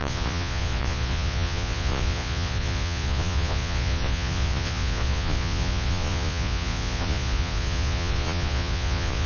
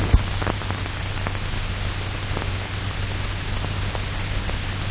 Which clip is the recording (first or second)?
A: second